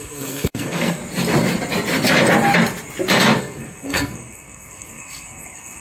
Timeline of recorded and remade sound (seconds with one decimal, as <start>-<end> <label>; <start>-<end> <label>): 0.0-1.0 remade; 1.0-3.4 recorded; 3.4-5.8 remade